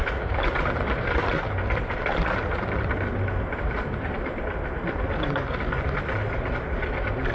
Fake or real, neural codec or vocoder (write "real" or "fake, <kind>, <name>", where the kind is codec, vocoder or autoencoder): real